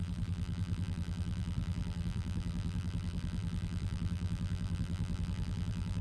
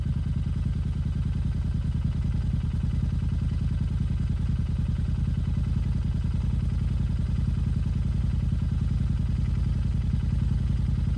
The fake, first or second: first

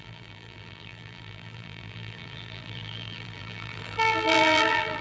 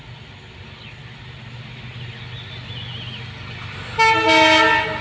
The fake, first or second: first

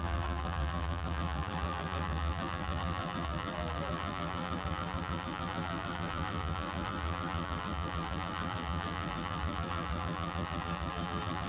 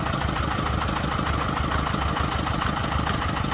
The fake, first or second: first